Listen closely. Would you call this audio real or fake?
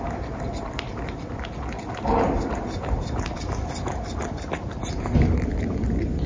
real